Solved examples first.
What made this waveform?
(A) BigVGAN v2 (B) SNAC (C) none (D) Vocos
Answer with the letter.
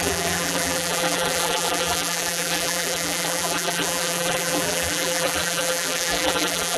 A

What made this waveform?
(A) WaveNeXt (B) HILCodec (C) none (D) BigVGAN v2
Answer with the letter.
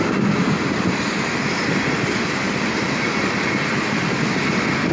C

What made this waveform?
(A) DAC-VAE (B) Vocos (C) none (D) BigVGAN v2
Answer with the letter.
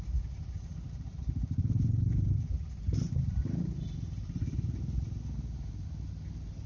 C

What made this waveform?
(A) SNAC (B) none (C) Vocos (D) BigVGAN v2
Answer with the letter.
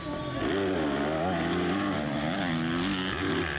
B